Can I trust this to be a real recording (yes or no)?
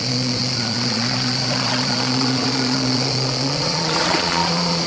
no